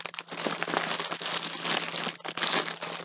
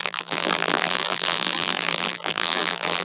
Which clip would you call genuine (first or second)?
first